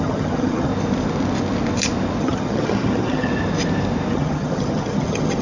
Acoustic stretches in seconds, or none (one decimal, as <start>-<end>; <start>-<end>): 0.7-2.2; 3.3-4.1

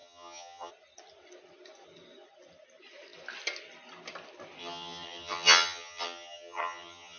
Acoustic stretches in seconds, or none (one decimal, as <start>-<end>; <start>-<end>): 0.7-4.6

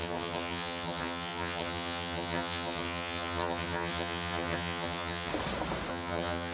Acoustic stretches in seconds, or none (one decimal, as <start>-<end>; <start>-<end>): 5.3-5.9

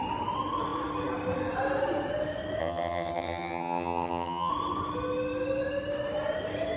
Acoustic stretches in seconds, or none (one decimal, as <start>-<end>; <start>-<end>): 0.0-2.6; 4.5-6.8

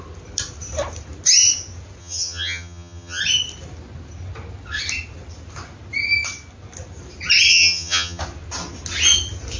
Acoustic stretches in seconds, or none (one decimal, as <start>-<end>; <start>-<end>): 0.0-2.0; 3.2-7.5; 8.2-9.6

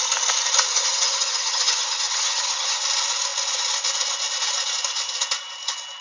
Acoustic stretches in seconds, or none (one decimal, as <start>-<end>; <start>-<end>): 0.0-0.7; 2.8-6.0